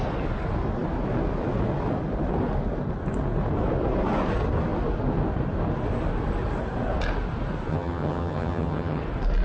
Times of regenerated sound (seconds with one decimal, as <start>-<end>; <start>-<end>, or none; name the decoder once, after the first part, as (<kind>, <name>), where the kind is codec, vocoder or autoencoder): 7.7-9.0 (vocoder, HiFi-GAN)